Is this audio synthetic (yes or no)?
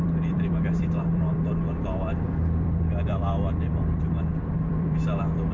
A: yes